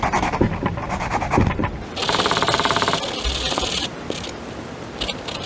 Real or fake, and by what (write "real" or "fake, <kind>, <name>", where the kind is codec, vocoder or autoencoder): fake, vocoder, BigVGAN v2